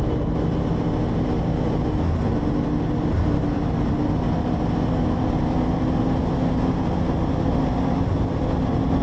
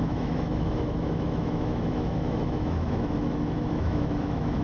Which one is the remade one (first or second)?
second